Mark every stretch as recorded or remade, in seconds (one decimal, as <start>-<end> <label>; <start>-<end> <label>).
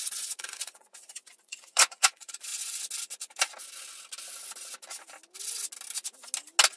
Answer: 0.0-2.5 remade; 2.5-6.8 recorded